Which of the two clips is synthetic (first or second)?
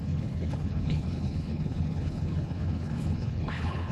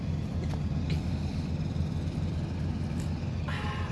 first